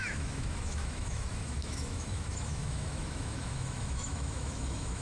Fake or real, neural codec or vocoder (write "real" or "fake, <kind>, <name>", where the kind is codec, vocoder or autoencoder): fake, autoencoder, DAC-VAE